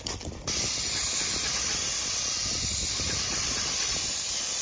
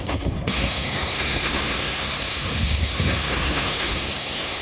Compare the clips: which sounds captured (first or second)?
first